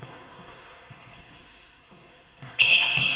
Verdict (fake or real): fake